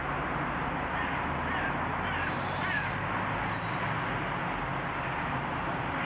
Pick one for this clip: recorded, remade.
remade